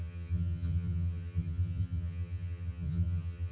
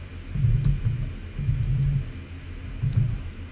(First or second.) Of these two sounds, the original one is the second